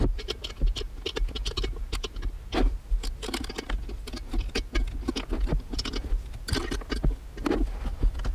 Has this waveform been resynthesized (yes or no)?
no